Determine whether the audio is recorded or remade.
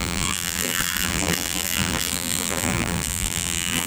remade